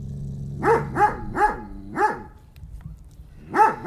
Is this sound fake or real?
real